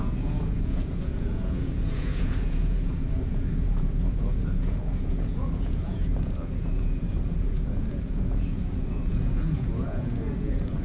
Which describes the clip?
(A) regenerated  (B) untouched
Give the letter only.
A